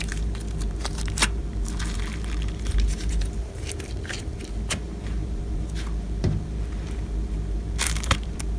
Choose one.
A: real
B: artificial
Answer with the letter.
B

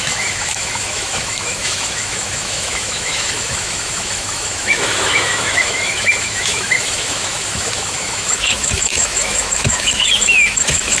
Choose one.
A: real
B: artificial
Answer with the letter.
B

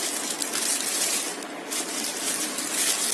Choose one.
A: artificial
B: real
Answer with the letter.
B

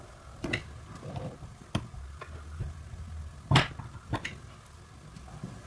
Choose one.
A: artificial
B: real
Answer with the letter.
B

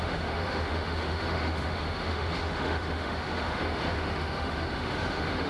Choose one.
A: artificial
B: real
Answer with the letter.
A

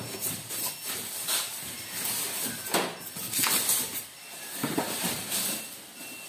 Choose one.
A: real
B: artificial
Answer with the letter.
B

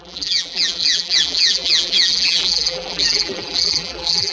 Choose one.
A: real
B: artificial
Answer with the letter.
B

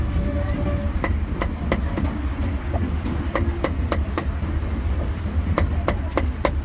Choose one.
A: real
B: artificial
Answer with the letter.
A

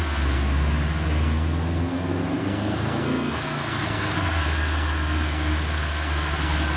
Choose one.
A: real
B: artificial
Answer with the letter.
B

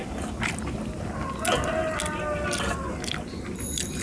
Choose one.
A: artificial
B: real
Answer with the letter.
B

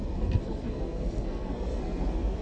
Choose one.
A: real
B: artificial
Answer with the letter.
B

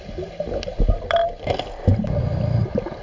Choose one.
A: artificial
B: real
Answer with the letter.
B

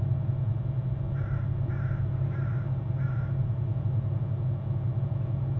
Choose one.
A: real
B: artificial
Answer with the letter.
A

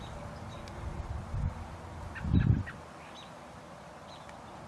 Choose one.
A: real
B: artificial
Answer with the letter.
A